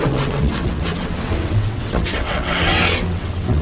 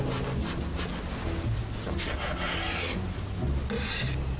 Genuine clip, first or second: second